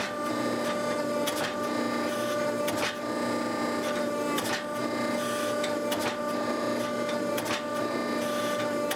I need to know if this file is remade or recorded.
recorded